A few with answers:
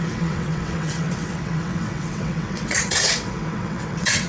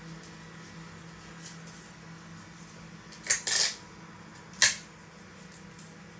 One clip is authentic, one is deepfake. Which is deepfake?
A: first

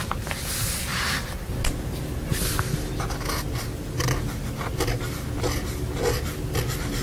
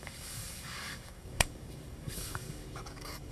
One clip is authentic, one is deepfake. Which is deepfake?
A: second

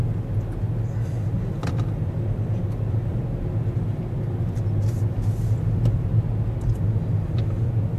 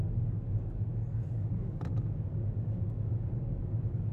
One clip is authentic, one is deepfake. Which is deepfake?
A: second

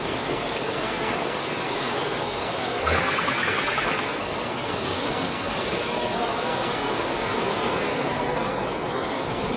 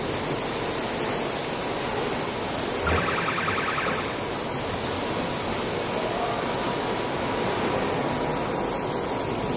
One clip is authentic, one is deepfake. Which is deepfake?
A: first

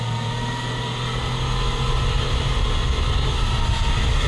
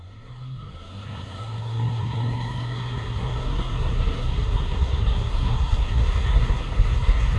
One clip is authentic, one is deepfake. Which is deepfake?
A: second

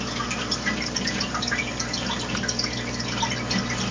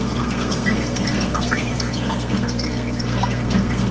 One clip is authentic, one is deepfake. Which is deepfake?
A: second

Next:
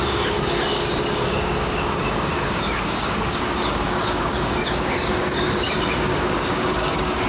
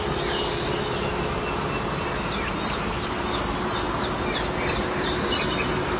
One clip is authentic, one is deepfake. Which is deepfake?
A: first